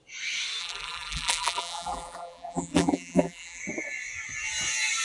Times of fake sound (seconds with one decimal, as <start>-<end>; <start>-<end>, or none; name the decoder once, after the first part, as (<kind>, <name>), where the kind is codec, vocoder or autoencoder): 0.6-3.6 (vocoder, BigVGAN v2)